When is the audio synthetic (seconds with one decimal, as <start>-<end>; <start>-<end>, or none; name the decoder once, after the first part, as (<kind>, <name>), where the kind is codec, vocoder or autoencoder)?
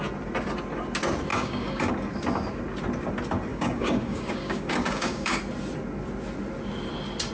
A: 1.3-1.9 (codec, DAC); 3.5-5.4